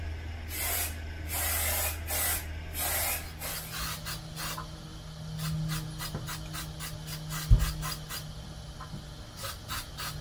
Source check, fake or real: real